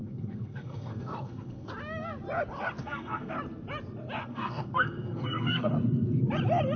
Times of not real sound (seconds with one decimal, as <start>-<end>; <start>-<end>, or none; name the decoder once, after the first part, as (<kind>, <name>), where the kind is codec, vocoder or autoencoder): 0.0-1.7 (codec, SNAC); 2.8-3.3; 4.2-5.7